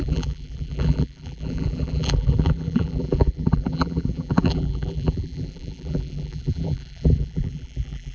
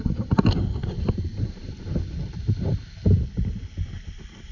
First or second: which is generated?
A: first